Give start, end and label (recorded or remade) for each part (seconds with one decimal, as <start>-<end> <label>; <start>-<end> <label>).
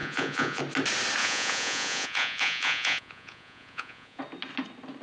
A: 0.0-0.6 remade; 0.6-1.2 recorded; 1.2-4.2 remade; 4.2-5.0 recorded